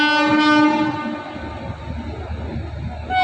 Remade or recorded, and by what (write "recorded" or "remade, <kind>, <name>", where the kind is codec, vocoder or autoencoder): recorded